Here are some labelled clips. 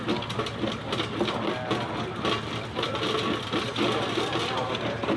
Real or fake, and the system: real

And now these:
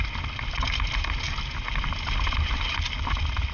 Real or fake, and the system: real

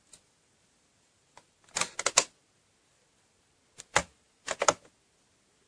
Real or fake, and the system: real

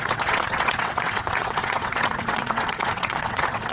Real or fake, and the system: fake, vocoder, WaveNeXt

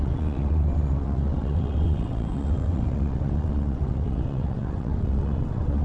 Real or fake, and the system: fake, vocoder, WaveNeXt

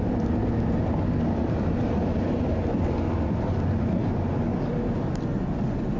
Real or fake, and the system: real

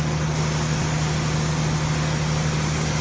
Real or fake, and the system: real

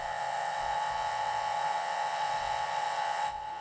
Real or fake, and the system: fake, vocoder, WaveNeXt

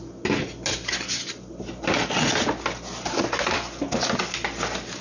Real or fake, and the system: real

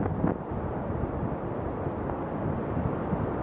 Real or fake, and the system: real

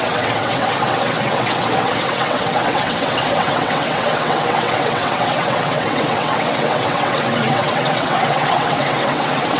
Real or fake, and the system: fake, vocoder, WaveNeXt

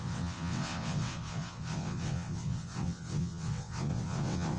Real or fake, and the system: fake, vocoder, WaveNeXt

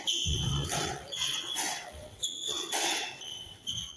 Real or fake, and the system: fake, vocoder, WaveNeXt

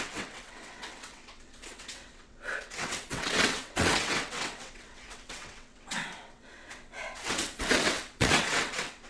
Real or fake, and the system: fake, vocoder, WaveNeXt